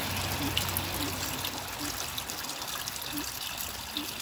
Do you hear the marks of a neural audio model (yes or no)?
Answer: no